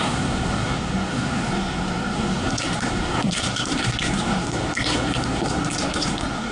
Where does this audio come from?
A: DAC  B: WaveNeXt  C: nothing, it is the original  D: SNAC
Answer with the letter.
D